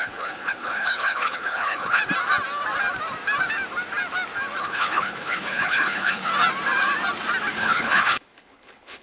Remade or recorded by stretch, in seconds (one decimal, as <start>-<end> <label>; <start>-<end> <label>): 0.0-2.0 remade; 2.0-4.6 recorded; 4.6-6.3 remade; 6.3-7.5 recorded; 7.5-9.0 remade